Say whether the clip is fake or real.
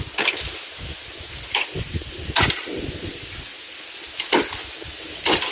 real